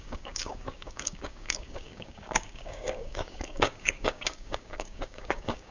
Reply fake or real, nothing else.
fake